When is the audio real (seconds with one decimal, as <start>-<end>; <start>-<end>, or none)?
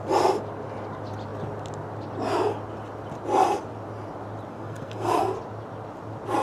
0.0-4.5; 5.2-6.4